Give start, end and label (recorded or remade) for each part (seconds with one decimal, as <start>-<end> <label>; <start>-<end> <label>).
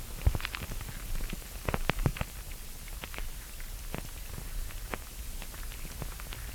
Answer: 0.0-6.5 recorded